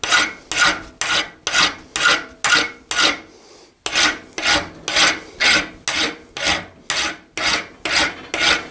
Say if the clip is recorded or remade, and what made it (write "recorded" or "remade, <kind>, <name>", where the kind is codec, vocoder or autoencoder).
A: recorded